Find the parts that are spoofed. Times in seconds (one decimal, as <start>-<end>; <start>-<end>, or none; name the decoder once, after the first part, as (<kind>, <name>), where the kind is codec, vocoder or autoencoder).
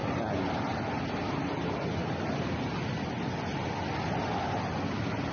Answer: none